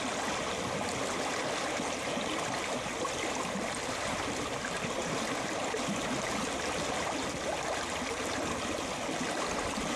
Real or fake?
real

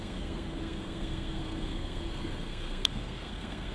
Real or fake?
fake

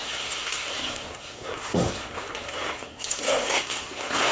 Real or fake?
fake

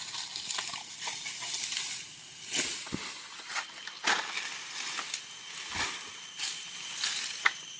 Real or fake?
real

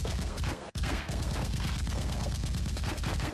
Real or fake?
fake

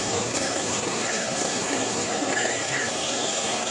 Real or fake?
fake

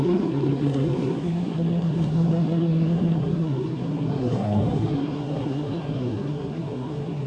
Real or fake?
fake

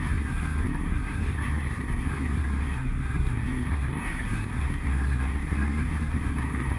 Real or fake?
fake